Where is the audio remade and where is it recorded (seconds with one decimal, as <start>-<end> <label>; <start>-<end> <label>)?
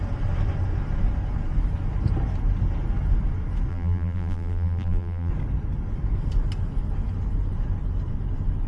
0.0-3.7 recorded; 3.7-5.3 remade; 5.3-8.7 recorded